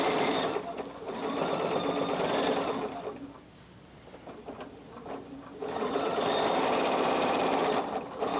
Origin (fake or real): fake